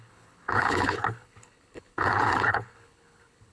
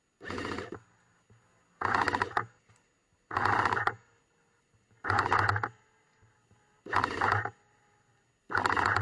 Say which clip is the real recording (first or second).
second